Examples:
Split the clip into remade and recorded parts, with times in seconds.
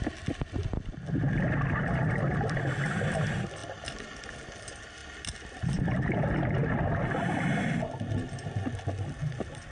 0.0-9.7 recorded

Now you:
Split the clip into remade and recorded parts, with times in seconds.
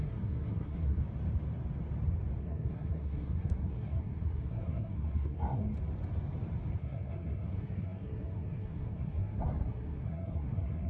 0.0-1.0 remade; 1.0-2.4 recorded; 2.4-5.6 remade; 5.6-6.8 recorded; 6.8-10.9 remade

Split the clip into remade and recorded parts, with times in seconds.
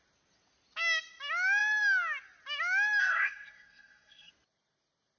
0.0-3.0 recorded; 3.0-4.3 remade; 4.3-5.2 recorded